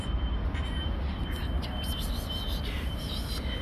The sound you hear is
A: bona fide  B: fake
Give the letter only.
A